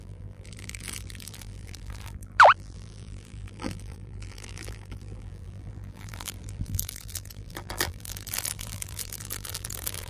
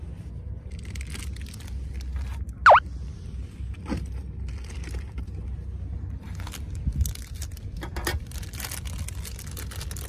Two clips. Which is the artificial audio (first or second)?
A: first